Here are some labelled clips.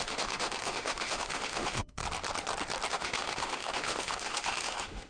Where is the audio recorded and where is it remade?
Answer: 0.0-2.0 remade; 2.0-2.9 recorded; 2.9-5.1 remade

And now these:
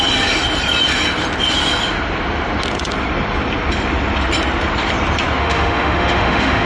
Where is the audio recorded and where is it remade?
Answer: 0.0-5.4 recorded; 5.4-6.7 remade